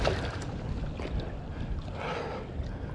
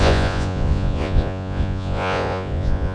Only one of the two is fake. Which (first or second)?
second